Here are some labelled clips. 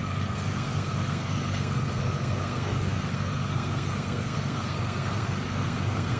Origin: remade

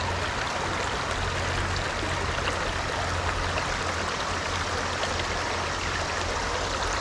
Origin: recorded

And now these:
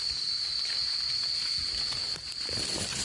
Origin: recorded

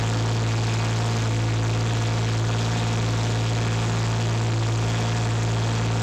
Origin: recorded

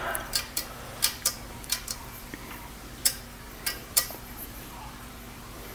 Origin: remade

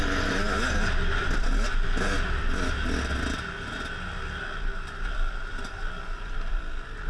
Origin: recorded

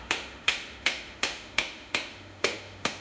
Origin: remade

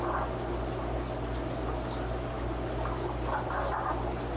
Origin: recorded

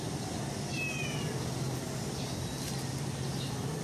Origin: recorded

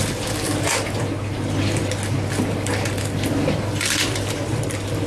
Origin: recorded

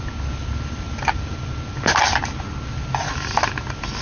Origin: recorded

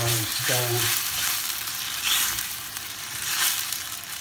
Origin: remade